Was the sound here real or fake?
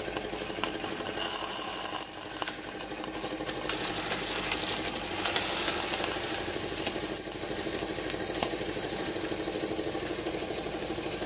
real